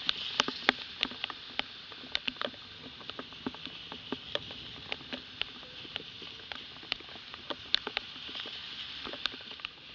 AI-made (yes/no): no